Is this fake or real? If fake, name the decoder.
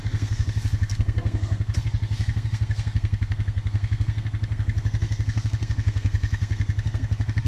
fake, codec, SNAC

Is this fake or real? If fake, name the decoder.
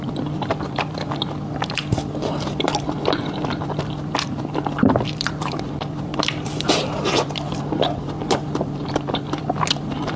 fake, vocoder, BigVGAN v2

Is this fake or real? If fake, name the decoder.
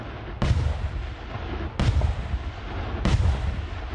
real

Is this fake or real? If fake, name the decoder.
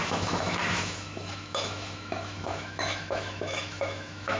fake, autoencoder, DAC-VAE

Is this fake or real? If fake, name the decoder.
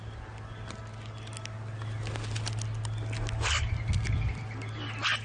real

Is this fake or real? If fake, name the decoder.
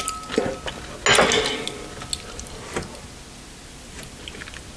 real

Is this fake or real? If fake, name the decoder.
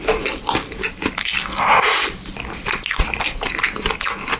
real